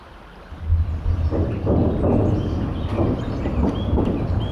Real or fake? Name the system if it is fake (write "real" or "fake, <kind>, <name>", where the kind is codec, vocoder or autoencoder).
real